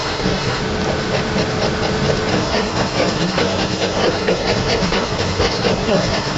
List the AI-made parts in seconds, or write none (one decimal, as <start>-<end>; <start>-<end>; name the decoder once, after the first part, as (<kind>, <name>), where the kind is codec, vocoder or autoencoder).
0.0-0.6 (codec, SNAC); 2.3-6.4